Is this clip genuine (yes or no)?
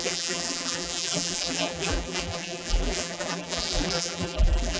no